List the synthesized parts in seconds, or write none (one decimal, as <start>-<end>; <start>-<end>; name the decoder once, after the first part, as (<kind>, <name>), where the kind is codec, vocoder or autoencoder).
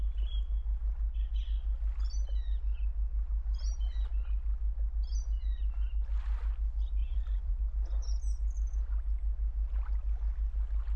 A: 7.0-7.6 (vocoder, BigVGAN v2)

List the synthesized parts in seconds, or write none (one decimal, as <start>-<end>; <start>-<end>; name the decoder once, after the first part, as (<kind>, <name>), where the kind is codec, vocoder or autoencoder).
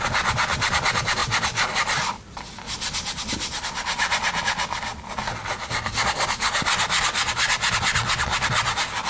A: none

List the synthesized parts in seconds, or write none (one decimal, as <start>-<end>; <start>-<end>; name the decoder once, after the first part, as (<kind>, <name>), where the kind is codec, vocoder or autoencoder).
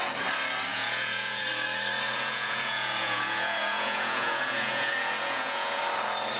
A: 0.7-1.5 (vocoder, Vocos); 2.1-5.8